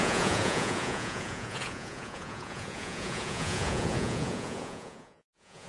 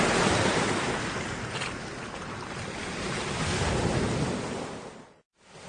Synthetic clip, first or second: first